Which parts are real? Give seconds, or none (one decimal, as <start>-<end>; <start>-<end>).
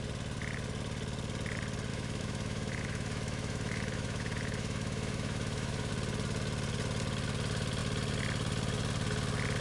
0.0-1.9; 5.9-9.6